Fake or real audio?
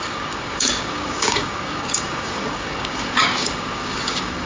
fake